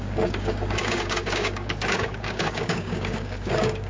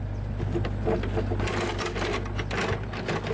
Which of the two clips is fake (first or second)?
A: first